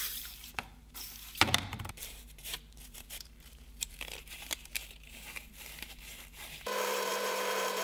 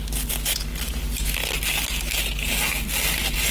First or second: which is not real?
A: first